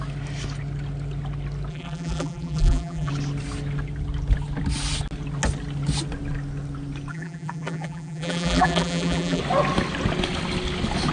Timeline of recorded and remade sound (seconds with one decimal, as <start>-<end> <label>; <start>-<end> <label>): 0.0-1.7 recorded; 1.7-3.1 remade; 3.1-7.1 recorded; 7.1-9.4 remade; 9.4-11.1 recorded